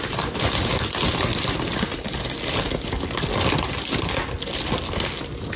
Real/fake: real